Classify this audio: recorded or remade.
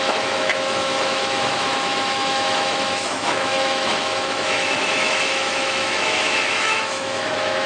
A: remade